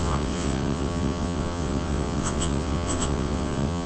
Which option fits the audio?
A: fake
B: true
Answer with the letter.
A